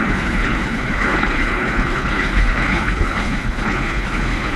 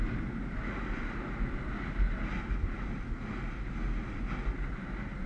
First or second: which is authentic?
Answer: second